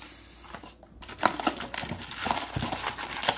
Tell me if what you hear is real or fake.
real